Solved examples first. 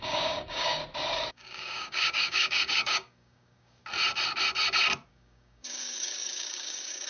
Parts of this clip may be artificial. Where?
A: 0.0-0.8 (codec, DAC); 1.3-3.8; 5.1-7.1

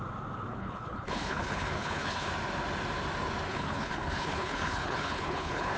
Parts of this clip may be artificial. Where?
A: 0.5-2.3 (codec, HILCodec); 3.5-5.8